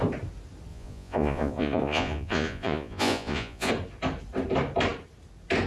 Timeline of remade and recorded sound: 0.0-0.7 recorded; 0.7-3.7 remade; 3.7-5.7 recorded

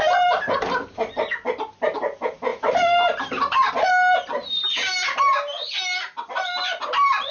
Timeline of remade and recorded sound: 0.0-2.5 recorded; 2.5-3.7 remade; 3.7-7.3 recorded

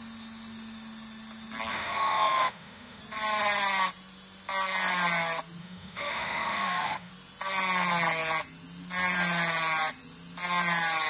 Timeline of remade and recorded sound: 0.0-1.7 recorded; 1.7-3.0 remade; 3.0-5.6 recorded; 5.6-7.1 remade; 7.1-11.1 recorded

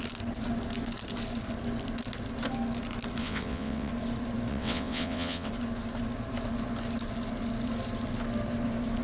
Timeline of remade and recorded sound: 0.0-3.2 recorded; 3.2-3.9 remade; 3.9-4.5 recorded; 4.5-5.5 remade; 5.5-9.0 recorded